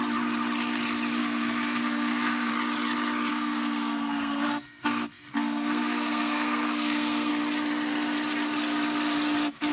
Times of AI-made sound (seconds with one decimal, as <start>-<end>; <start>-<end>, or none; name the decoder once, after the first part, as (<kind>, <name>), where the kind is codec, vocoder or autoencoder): 1.2-2.5 (codec, SNAC); 3.3-7.3